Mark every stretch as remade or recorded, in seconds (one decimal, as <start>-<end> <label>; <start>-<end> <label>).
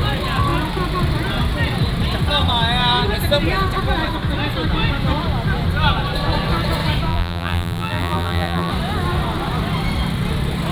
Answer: 0.0-7.1 recorded; 7.1-8.7 remade; 8.7-10.7 recorded